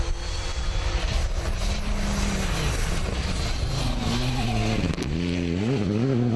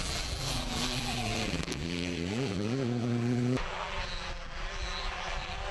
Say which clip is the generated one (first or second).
second